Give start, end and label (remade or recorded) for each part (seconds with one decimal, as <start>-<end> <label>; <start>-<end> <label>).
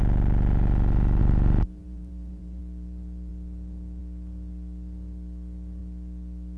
0.0-1.2 recorded; 1.2-2.6 remade; 2.6-6.6 recorded